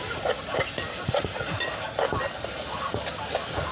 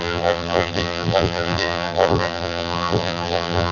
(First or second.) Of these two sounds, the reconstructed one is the second